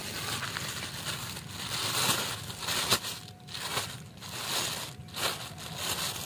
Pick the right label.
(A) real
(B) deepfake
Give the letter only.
A